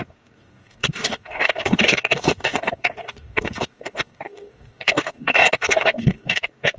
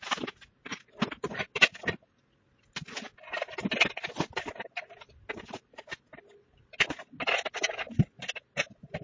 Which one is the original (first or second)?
second